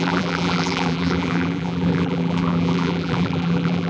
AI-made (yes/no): yes